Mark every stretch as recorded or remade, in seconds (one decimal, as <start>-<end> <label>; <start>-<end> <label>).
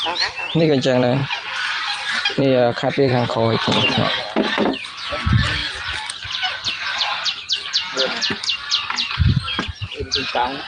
0.0-1.2 remade; 1.2-2.1 recorded; 2.1-10.7 remade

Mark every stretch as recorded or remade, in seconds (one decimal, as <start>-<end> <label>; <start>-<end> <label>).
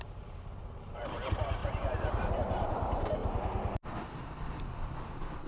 0.0-3.2 remade; 3.2-4.6 recorded; 4.6-5.5 remade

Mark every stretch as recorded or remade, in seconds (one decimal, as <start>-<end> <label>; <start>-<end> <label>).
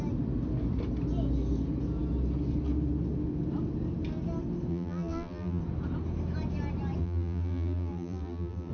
0.0-4.7 recorded; 4.7-5.6 remade; 5.6-7.0 recorded; 7.0-8.7 remade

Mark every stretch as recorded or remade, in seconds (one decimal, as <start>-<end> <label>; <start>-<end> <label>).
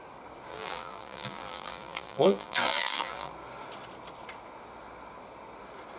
0.0-0.5 recorded; 0.5-3.3 remade; 3.3-6.0 recorded